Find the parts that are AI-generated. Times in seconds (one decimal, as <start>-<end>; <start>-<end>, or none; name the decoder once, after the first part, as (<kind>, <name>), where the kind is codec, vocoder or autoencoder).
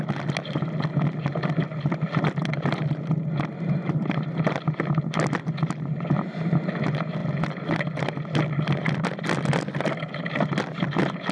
none